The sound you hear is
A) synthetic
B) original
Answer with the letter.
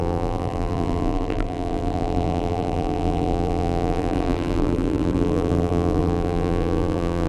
A